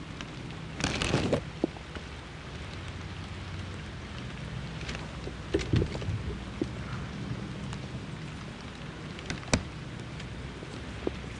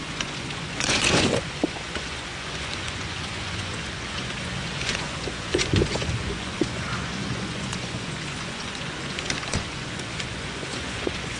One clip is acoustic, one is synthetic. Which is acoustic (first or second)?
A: first